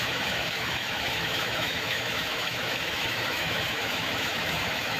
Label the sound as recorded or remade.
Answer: remade